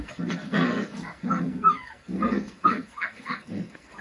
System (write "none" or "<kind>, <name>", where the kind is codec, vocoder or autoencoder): codec, SNAC